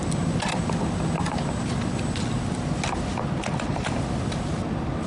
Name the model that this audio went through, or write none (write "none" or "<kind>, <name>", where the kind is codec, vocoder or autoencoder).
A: none